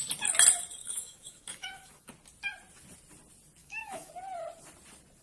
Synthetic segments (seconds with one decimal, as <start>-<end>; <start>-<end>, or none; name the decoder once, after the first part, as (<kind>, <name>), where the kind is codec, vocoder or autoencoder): 0.8-2.1 (autoencoder, DAC-VAE); 3.6-4.1